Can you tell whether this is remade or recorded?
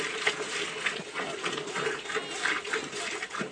recorded